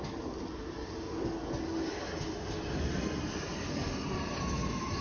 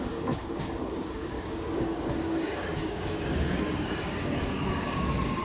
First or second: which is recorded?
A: first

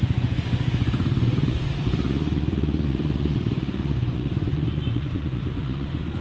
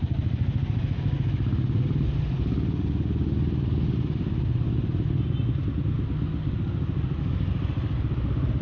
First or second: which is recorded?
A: second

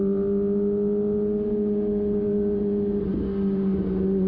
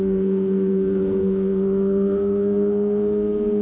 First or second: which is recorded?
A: first